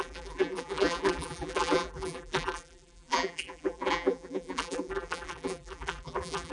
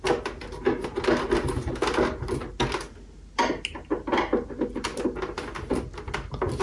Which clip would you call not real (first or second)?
first